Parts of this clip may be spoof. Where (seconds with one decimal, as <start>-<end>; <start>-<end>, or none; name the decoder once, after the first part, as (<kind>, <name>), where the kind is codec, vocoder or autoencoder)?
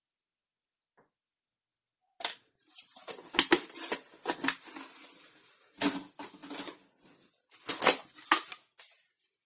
1.8-3.9 (vocoder, BigVGAN v2)